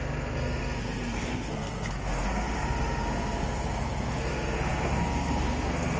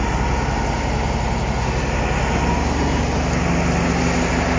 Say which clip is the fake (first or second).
first